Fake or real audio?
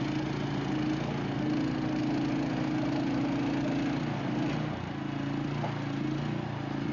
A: real